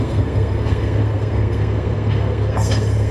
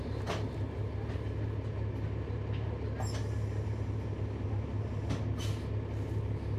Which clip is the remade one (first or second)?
first